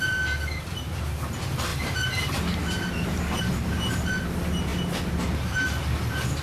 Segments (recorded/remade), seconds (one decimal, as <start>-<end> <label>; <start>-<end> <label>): 0.0-1.7 recorded; 1.7-4.1 remade; 4.1-6.4 recorded